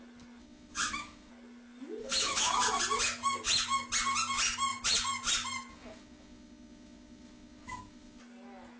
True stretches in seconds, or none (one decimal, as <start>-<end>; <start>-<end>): 0.0-0.4; 1.3-2.0; 2.8-5.7; 8.2-8.8